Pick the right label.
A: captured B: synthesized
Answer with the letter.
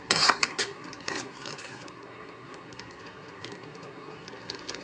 B